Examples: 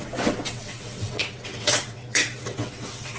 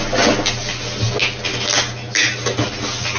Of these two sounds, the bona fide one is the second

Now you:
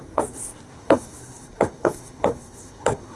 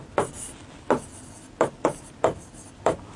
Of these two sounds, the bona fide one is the second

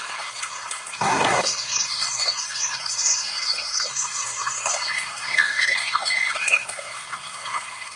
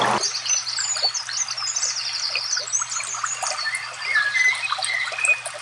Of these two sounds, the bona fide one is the second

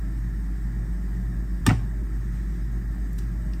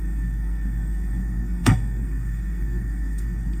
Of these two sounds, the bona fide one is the first